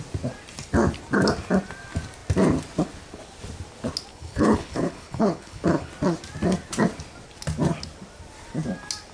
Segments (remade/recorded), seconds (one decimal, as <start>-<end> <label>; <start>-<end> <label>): 0.0-4.1 recorded; 4.1-5.9 remade; 5.9-9.1 recorded